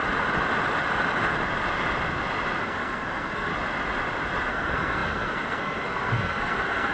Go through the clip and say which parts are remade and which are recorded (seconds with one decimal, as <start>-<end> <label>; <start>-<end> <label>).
0.0-2.6 recorded; 2.6-3.5 remade; 3.5-4.5 recorded; 4.5-6.9 remade